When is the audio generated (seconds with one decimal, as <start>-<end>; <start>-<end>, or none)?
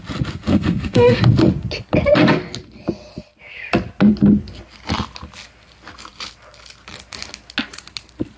0.5-1.2